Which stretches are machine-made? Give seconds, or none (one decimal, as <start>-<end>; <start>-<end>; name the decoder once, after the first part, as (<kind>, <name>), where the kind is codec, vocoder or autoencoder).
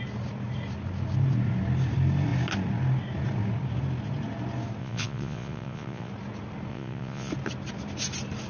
4.8-6.1 (vocoder, Vocos); 6.7-7.3